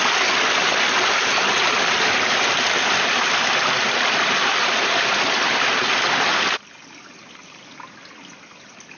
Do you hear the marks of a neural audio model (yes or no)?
no